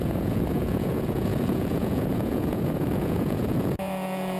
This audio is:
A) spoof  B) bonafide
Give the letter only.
A